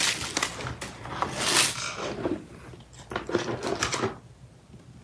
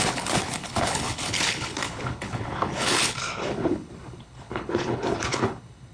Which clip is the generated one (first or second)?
second